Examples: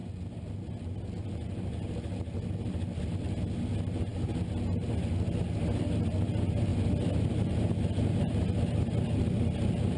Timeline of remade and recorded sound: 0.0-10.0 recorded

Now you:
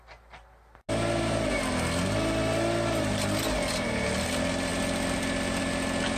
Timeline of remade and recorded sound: 0.0-6.2 recorded

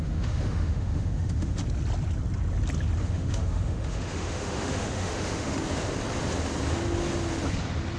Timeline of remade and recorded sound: 0.0-1.6 remade; 1.6-3.0 recorded; 3.0-5.6 remade; 5.6-8.0 recorded

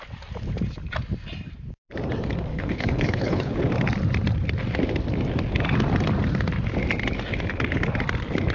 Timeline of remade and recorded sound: 0.0-2.5 recorded; 2.5-3.6 remade; 3.6-8.5 recorded